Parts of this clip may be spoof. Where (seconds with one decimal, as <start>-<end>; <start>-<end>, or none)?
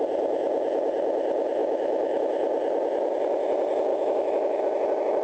1.6-2.2; 3.9-4.6